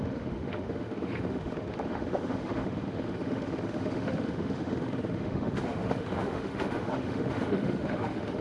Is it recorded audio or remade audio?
remade